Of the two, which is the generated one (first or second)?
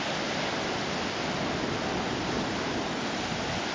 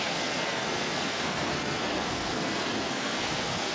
second